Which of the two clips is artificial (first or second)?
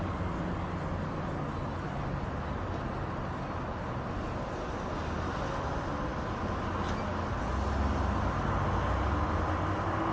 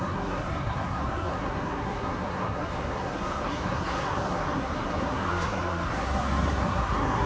second